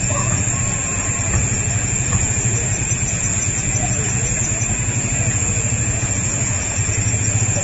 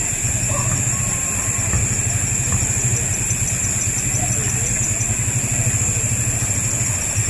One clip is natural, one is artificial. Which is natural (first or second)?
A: second